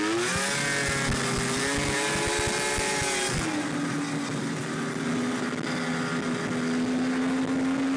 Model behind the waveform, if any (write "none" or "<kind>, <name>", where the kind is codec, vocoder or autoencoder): none